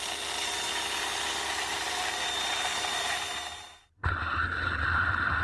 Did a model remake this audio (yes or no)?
no